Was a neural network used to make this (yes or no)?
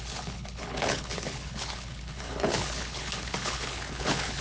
yes